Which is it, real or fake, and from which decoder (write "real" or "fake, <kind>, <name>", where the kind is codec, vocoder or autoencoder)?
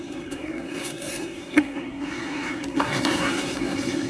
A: fake, codec, SNAC